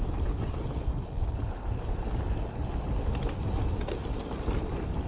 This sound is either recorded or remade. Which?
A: recorded